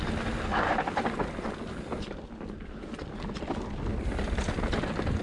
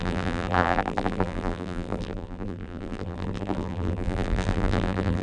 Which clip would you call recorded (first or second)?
first